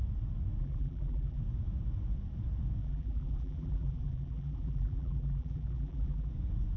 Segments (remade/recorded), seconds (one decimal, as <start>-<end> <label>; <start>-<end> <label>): 0.0-0.6 recorded; 0.6-1.4 remade; 1.4-2.8 recorded; 2.8-6.3 remade; 6.3-6.8 recorded